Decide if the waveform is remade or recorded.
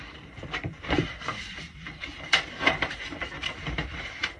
remade